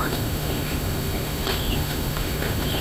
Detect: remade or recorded remade